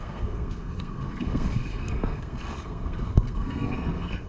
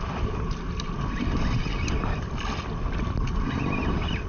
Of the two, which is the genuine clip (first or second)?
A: second